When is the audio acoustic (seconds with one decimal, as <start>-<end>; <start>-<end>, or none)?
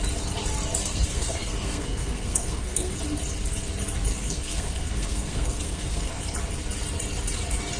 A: 0.0-0.8; 2.9-4.1; 6.2-7.8